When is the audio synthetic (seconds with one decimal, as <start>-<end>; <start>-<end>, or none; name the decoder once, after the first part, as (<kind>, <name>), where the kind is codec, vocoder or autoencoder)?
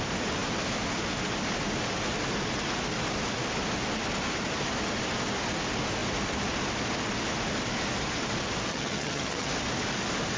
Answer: 8.7-9.5 (vocoder, HiFi-GAN)